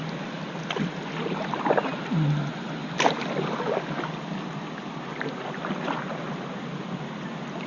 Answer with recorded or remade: recorded